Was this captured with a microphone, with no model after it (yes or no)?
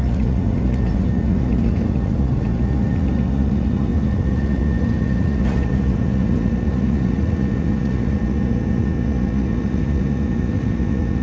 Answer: no